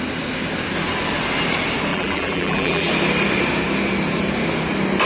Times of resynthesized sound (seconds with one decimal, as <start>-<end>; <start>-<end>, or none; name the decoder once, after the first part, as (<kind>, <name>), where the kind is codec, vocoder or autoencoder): 1.9-2.9 (vocoder, BigVGAN v2)